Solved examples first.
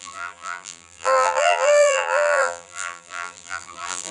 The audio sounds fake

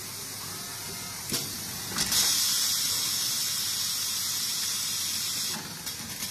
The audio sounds real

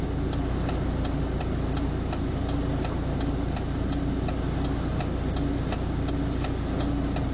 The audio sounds real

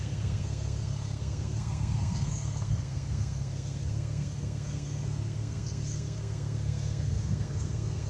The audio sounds fake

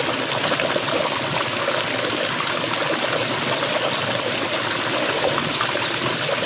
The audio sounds real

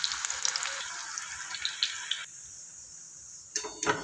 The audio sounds real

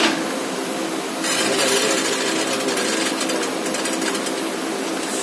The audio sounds real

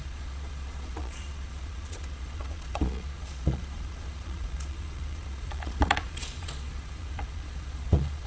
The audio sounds fake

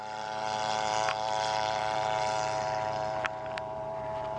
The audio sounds fake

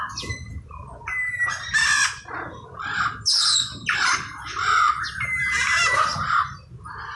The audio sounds real